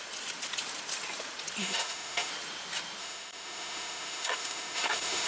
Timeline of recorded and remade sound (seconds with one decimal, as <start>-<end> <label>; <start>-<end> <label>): 0.0-1.6 recorded; 1.6-2.3 remade; 2.3-3.0 recorded; 3.0-5.3 remade